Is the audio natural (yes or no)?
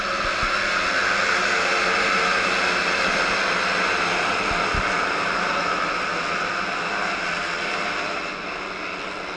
yes